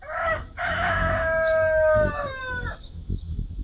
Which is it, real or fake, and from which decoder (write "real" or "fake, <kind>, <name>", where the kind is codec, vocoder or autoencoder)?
fake, autoencoder, DAC-VAE